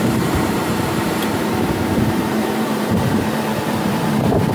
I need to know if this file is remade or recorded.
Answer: remade